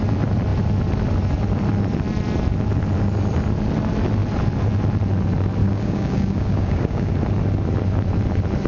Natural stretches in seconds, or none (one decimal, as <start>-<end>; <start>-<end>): 0.0-5.6; 7.1-8.7